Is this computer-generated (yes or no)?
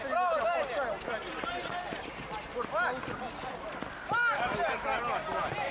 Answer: no